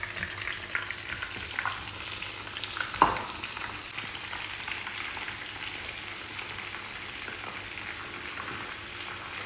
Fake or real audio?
real